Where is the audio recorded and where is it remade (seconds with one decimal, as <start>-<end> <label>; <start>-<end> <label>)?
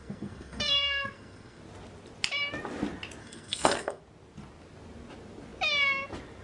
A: 0.0-1.6 remade; 1.6-3.2 recorded; 3.2-4.0 remade; 4.0-6.4 recorded